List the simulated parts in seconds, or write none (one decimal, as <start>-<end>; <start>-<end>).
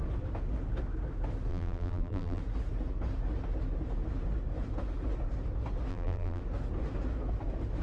1.5-2.4; 5.9-6.4